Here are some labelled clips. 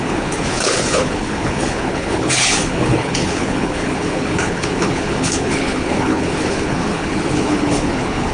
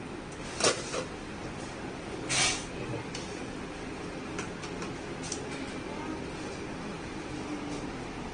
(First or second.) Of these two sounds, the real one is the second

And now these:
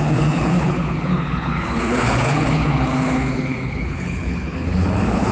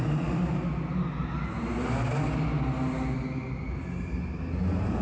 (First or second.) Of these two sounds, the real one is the second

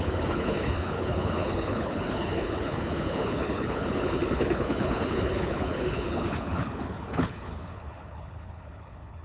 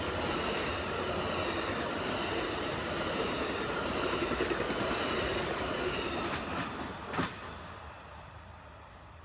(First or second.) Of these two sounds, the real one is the second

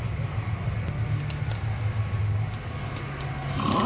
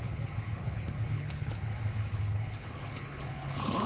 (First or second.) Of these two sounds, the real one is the first